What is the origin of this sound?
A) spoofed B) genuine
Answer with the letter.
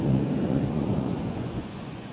A